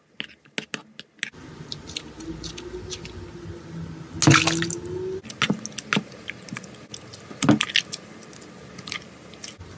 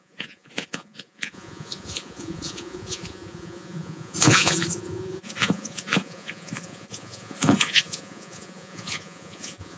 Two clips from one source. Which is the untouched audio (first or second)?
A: first